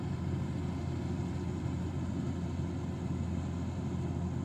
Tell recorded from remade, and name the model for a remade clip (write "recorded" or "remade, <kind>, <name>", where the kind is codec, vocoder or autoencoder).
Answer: recorded